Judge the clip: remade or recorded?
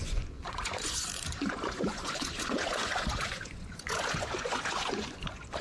remade